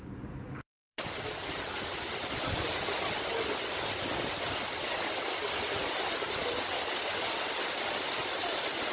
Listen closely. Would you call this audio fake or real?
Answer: real